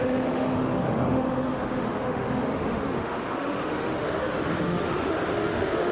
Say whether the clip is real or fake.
fake